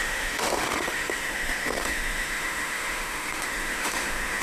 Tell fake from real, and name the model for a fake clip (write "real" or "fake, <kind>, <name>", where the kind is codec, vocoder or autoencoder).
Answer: fake, autoencoder, DAC-VAE